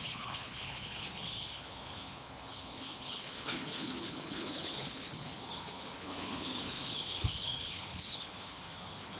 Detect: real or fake fake